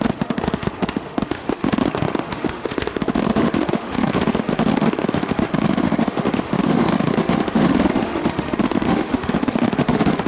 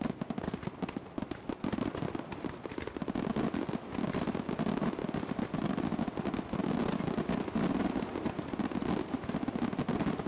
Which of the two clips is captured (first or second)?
second